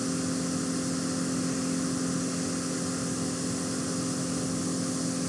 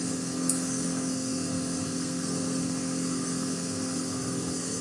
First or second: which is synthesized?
second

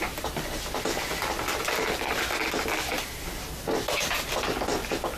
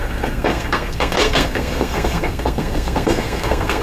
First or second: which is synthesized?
second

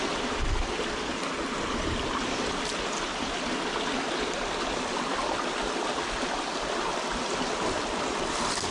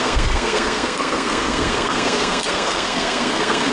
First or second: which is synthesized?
second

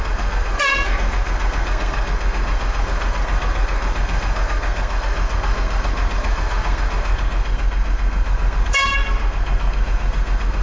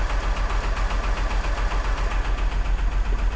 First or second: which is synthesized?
first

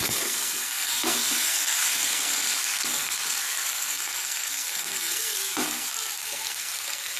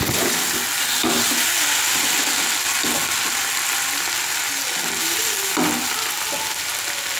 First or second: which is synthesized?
first